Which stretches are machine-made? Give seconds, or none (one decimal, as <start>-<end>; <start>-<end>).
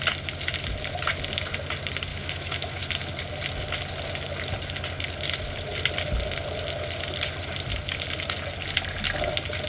2.1-2.8